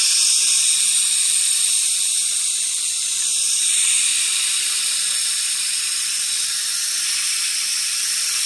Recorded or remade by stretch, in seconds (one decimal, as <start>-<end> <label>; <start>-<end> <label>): 0.0-8.5 recorded